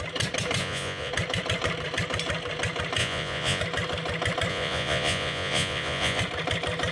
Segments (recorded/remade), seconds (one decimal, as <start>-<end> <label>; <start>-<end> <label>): 0.0-0.6 recorded; 0.6-1.1 remade; 1.1-3.0 recorded; 3.0-3.6 remade; 3.6-4.5 recorded; 4.5-6.2 remade; 6.2-6.9 recorded